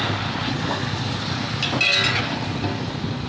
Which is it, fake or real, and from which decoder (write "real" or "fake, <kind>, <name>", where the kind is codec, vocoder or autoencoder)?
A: real